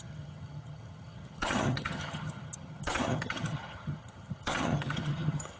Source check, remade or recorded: remade